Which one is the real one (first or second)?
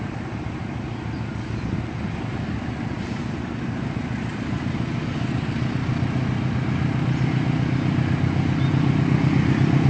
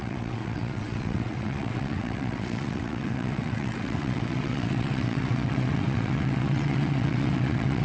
first